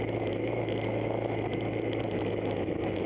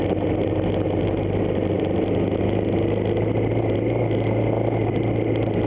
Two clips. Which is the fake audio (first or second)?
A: first